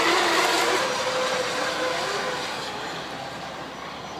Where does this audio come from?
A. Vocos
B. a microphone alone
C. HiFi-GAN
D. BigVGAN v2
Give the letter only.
B